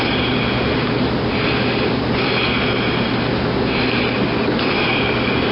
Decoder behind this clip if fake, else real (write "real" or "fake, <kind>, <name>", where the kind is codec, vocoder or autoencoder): real